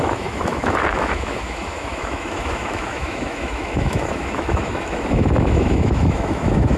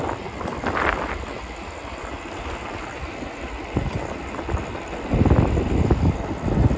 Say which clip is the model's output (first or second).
first